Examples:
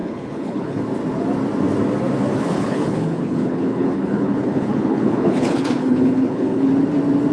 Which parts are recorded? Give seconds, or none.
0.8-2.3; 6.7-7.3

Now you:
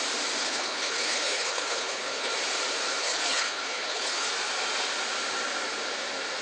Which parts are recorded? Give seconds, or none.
0.0-0.4; 2.3-3.0; 4.3-6.4

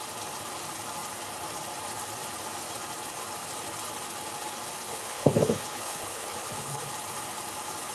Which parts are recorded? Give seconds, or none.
0.0-4.9; 6.9-7.9